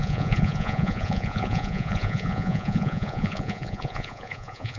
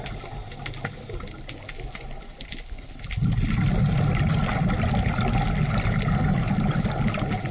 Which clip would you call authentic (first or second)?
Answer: second